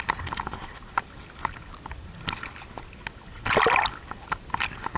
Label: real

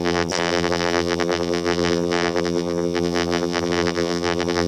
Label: fake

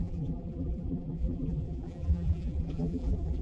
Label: fake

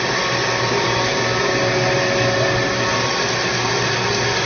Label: real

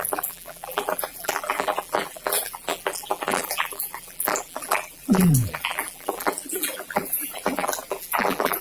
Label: fake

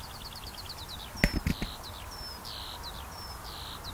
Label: real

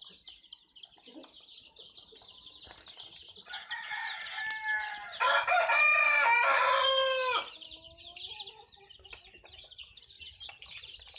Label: real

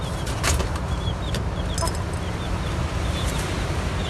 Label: real